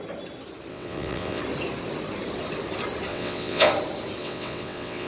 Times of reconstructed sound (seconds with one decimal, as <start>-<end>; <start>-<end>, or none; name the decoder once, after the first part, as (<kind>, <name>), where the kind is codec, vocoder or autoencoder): 0.7-1.4 (vocoder, WaveNeXt); 3.1-3.7; 4.2-5.1